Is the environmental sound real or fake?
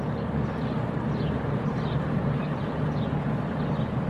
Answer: real